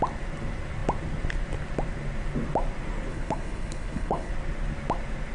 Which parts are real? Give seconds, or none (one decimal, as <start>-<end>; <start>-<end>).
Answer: 0.0-3.1; 4.3-5.3